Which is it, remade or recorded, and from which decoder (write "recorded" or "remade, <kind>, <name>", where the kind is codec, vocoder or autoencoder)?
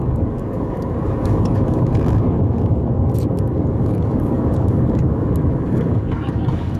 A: remade, codec, DAC